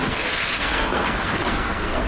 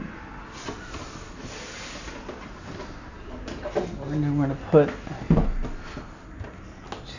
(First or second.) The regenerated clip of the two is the first